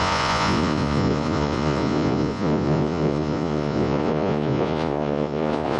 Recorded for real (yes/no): no